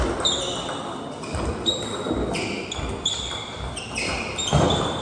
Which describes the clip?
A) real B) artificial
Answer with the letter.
A